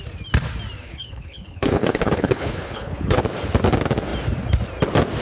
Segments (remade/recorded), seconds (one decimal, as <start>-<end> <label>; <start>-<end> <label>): 0.0-0.8 recorded; 0.8-3.2 remade; 3.2-5.2 recorded